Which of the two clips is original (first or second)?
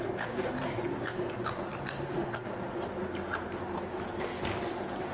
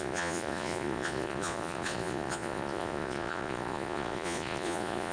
first